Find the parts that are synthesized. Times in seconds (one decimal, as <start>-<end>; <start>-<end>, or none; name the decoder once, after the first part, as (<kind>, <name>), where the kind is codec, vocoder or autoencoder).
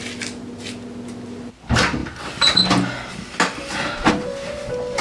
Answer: none